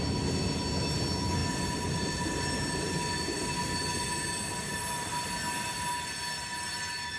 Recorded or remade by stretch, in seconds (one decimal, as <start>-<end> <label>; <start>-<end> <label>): 0.0-7.2 recorded